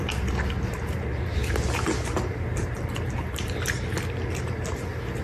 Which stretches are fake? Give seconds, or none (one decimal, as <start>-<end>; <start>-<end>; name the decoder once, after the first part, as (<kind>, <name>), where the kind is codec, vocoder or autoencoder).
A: none